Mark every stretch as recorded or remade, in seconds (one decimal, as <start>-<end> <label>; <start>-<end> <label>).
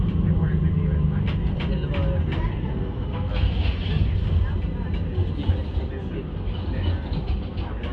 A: 0.0-2.7 recorded; 2.7-3.5 remade; 3.5-7.9 recorded